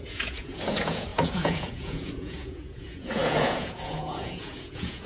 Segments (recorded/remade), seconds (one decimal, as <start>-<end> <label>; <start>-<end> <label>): 0.0-5.1 remade